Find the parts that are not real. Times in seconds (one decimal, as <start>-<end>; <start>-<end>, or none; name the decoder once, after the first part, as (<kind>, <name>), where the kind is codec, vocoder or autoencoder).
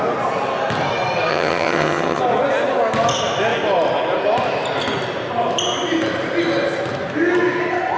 1.3-2.2 (vocoder, HiFi-GAN)